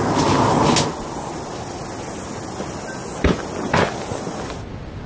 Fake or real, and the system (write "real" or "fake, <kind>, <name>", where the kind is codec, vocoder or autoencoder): real